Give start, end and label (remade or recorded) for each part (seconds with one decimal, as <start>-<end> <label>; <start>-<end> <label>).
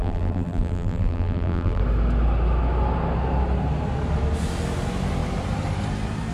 0.0-1.8 remade; 1.8-6.3 recorded